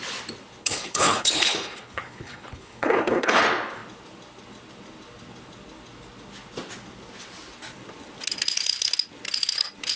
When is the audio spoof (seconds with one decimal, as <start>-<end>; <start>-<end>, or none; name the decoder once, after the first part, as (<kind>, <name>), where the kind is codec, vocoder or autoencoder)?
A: 0.6-3.4 (codec, HILCodec)